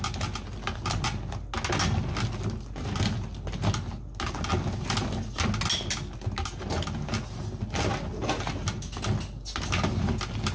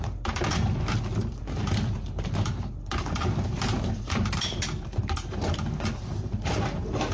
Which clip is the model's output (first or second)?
second